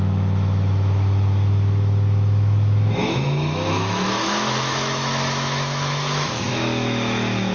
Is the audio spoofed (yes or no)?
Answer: yes